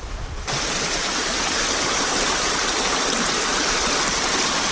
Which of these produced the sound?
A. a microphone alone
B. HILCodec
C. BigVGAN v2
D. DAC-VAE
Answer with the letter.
C